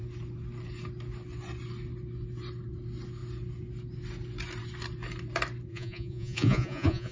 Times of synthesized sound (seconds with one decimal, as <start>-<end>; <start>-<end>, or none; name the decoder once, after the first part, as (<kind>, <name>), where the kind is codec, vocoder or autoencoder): 5.7-7.1 (vocoder, Vocos)